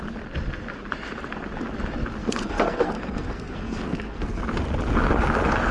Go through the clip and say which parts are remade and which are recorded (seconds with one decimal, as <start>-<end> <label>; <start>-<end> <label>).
0.0-2.2 recorded; 2.2-4.4 remade; 4.4-5.7 recorded